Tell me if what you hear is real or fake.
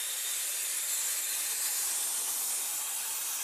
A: real